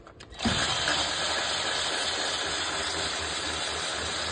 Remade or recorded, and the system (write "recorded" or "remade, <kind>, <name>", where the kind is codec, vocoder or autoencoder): remade, vocoder, BigVGAN v2